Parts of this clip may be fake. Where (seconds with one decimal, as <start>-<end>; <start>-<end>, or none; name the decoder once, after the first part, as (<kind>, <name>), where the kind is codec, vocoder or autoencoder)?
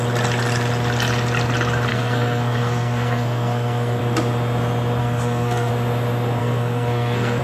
1.9-4.0 (codec, SNAC); 5.0-5.7; 6.4-7.4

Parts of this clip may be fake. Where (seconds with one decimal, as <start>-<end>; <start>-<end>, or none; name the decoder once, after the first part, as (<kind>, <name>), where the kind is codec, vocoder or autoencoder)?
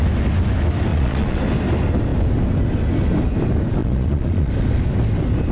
0.9-1.4 (vocoder, Vocos); 3.8-4.5